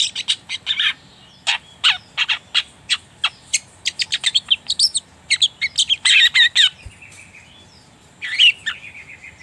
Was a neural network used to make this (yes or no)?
no